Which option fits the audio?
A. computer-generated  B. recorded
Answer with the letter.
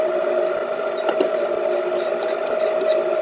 B